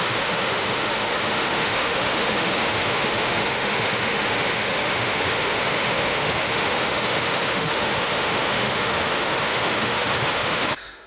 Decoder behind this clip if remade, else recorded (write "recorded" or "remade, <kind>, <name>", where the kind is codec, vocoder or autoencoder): remade, autoencoder, DAC-VAE